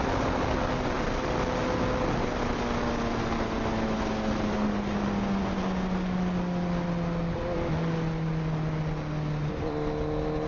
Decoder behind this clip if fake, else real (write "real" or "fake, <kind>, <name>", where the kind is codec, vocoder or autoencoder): real